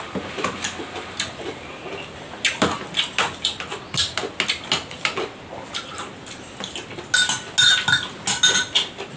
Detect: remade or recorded recorded